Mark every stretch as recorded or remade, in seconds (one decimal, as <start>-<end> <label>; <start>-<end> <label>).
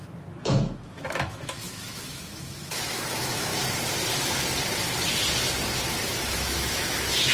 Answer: 0.0-3.5 remade; 3.5-6.1 recorded; 6.1-7.3 remade